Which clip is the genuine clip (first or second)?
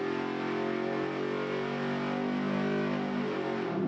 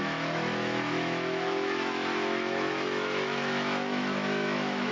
first